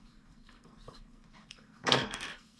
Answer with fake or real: fake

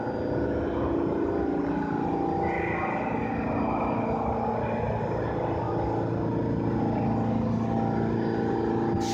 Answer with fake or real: fake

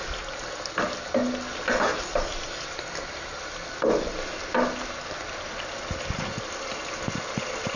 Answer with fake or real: real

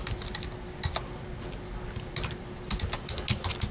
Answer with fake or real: real